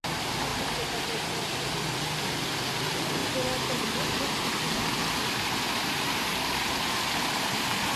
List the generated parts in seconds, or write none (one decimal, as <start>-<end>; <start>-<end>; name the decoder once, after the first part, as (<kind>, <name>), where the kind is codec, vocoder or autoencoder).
none